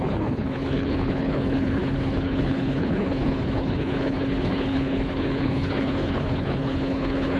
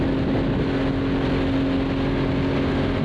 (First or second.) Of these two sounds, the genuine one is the second